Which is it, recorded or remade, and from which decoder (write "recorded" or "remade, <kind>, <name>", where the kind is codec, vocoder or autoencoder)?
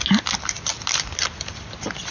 recorded